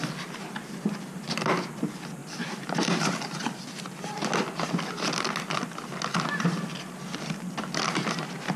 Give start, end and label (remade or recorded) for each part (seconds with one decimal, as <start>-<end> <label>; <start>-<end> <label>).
0.0-2.2 recorded; 2.2-4.0 remade; 4.0-8.6 recorded